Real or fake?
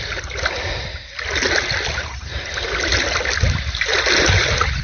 real